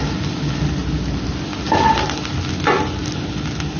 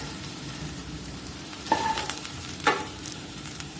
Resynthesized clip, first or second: second